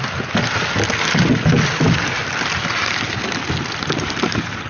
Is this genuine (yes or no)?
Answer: yes